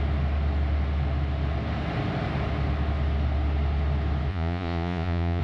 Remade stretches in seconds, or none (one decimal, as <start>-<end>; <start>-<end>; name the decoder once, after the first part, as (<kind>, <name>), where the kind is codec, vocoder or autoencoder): 4.3-5.4 (vocoder, Vocos)